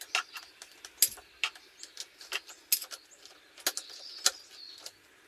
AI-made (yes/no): no